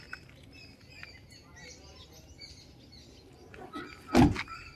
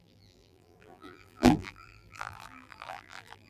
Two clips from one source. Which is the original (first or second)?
first